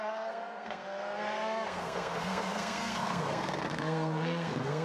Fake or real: fake